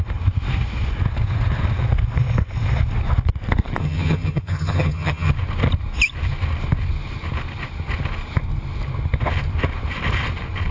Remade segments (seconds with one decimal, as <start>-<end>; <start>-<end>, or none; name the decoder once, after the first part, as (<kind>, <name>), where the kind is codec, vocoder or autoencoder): 3.8-5.3 (vocoder, HiFi-GAN)